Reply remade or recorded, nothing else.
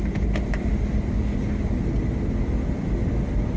recorded